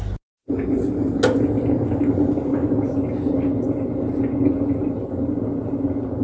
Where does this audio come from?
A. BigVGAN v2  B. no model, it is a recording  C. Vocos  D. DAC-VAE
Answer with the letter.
B